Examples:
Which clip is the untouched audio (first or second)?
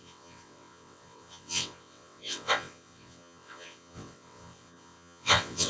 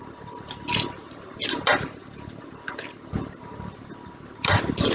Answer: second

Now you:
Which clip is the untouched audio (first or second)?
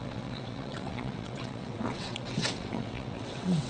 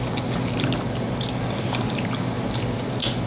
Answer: second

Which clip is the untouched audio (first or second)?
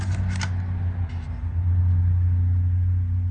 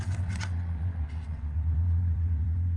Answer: first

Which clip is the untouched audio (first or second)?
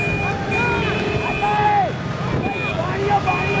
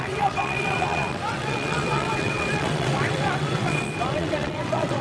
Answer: first